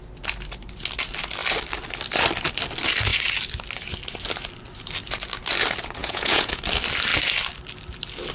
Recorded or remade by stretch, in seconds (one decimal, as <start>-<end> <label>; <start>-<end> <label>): 0.0-6.0 recorded; 6.0-6.6 remade; 6.6-8.3 recorded